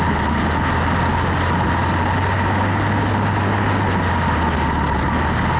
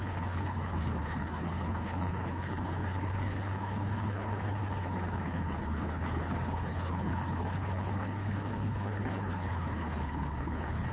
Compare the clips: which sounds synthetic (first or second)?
second